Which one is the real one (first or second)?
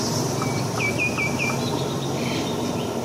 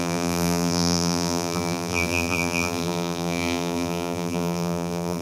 first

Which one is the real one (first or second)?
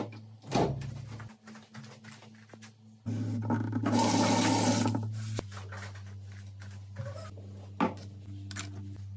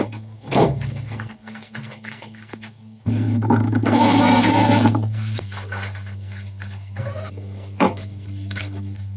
first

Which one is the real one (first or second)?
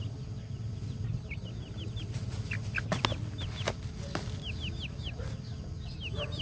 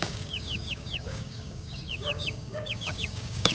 first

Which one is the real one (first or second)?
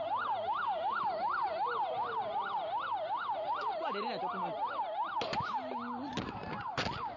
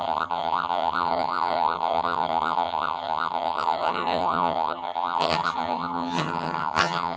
first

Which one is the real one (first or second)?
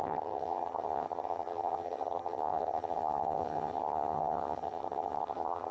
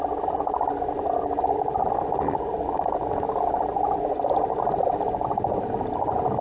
second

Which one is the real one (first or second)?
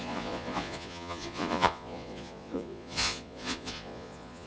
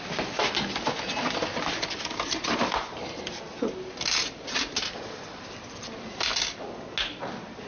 second